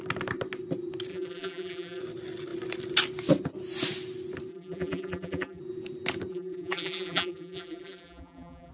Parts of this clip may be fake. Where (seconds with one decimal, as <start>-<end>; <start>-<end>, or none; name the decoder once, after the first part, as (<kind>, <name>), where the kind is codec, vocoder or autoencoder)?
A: 1.1-2.0 (vocoder, BigVGAN v2); 4.5-5.6; 6.3-8.7